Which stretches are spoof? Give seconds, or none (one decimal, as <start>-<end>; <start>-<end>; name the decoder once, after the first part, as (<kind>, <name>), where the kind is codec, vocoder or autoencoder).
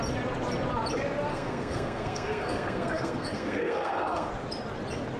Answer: 1.3-4.3 (codec, SNAC)